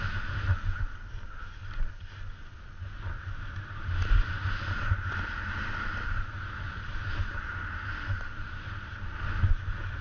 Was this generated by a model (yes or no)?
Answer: no